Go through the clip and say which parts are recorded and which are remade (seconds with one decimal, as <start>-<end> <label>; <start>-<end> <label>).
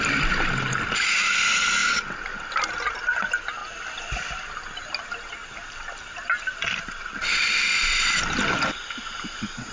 0.0-5.4 recorded; 5.4-7.0 remade; 7.0-9.7 recorded